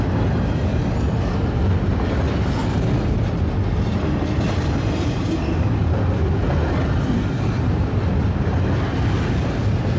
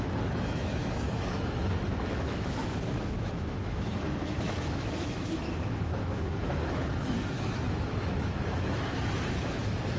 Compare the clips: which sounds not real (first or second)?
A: second